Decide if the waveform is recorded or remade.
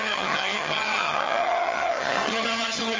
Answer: remade